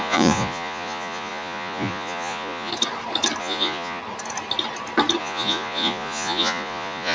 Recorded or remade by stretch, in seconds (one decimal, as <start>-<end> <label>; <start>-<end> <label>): 0.0-2.7 remade; 2.7-3.4 recorded; 3.4-4.0 remade; 4.0-5.2 recorded; 5.2-7.1 remade